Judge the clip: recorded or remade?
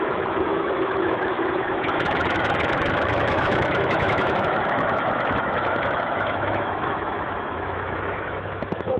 remade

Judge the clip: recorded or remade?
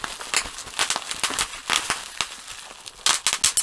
recorded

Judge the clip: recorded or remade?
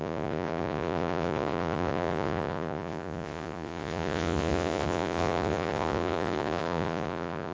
remade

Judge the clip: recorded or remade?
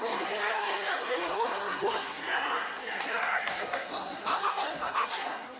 remade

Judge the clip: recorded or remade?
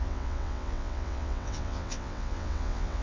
remade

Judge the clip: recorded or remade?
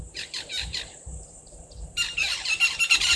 remade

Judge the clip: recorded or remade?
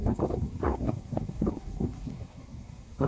remade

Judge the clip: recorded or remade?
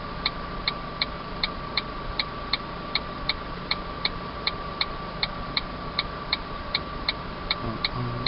remade